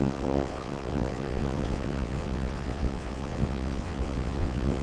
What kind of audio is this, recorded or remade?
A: remade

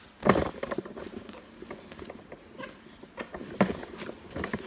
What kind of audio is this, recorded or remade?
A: recorded